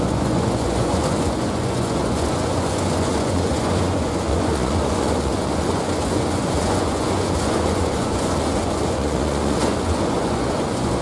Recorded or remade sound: remade